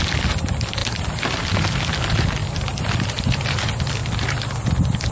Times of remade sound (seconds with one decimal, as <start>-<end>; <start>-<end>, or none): 0.0-4.0